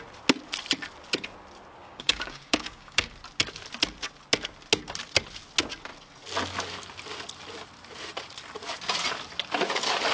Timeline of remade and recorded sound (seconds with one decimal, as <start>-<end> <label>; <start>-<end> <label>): 0.0-1.8 recorded; 1.8-3.1 remade; 3.1-10.1 recorded